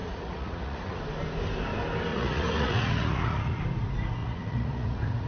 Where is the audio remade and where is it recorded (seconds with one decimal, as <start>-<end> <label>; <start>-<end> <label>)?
0.0-1.0 remade; 1.0-2.1 recorded; 2.1-3.6 remade; 3.6-4.2 recorded; 4.2-5.3 remade